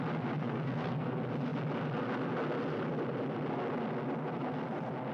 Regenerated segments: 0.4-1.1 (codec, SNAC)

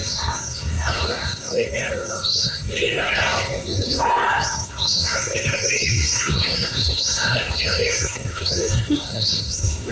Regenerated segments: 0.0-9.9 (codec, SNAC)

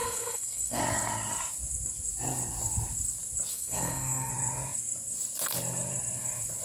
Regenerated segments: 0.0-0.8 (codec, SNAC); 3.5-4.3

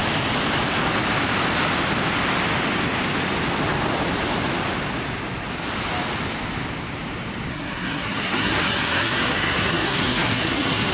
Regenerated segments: 7.5-10.9 (codec, SNAC)

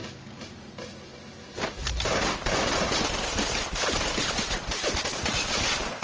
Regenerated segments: none